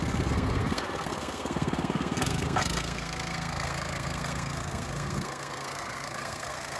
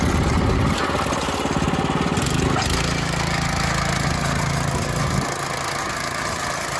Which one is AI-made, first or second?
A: first